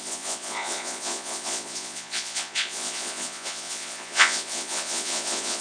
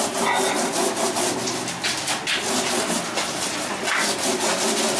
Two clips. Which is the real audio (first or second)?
second